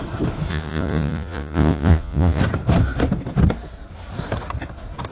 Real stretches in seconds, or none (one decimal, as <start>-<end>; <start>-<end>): 0.0-0.5; 2.4-5.1